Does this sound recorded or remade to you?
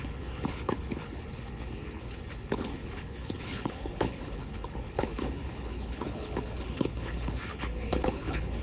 remade